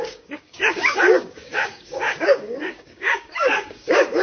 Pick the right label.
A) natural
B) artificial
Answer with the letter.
B